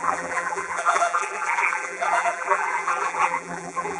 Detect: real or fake fake